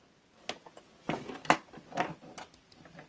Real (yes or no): yes